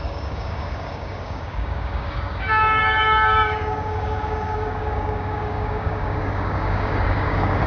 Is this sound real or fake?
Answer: fake